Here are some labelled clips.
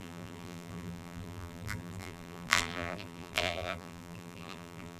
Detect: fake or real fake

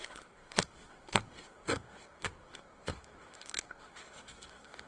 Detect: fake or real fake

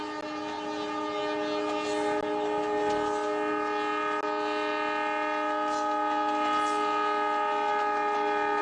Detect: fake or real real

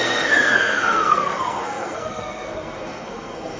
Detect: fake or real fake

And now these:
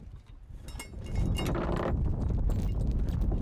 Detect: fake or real real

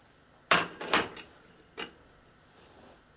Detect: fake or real real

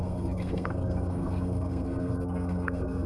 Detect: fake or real fake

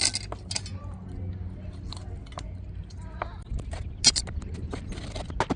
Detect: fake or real real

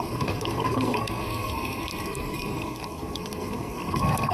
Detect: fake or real fake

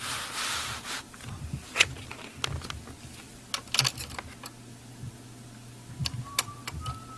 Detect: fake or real real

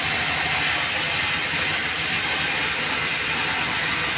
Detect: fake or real real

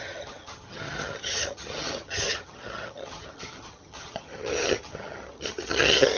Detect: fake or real fake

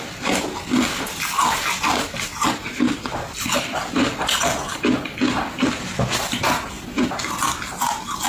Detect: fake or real real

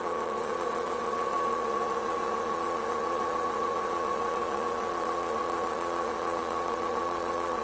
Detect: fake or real fake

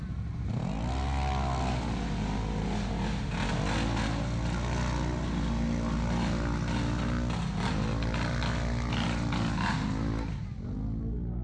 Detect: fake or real real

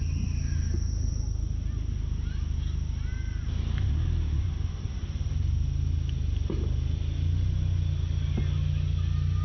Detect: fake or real real